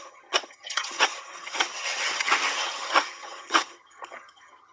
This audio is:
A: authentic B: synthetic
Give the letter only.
B